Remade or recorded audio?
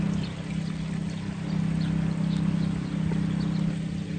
recorded